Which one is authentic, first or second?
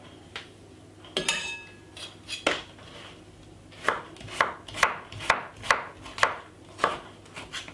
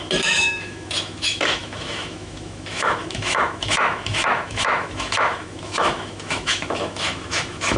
first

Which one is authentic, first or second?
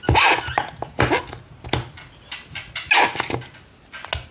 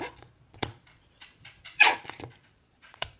first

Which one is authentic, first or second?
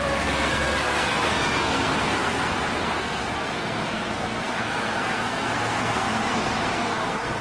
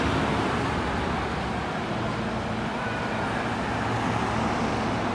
second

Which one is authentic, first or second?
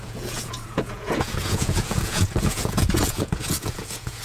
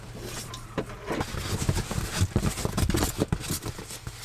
second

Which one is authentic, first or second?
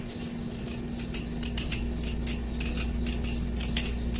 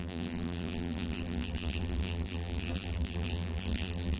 first